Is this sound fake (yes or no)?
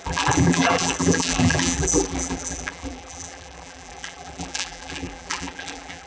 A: yes